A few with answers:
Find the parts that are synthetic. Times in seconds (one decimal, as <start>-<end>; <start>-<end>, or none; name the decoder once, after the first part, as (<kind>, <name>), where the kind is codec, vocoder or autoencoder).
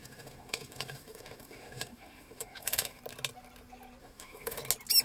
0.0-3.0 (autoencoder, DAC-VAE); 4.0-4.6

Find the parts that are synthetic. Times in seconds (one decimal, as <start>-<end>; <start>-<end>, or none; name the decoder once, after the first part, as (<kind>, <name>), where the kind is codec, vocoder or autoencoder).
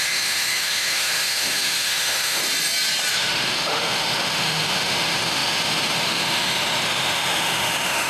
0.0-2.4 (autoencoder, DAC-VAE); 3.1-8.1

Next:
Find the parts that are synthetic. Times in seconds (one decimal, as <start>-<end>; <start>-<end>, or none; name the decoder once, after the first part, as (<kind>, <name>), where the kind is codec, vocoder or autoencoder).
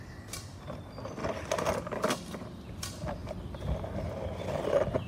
none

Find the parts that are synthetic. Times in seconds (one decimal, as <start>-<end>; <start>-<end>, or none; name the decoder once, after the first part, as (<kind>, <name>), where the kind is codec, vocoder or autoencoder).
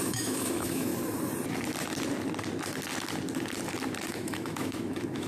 0.0-0.9 (autoencoder, DAC-VAE); 4.1-5.3